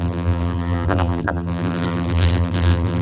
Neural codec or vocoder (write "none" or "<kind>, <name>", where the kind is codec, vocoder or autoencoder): vocoder, BigVGAN v2